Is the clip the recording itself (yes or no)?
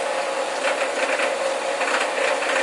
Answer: yes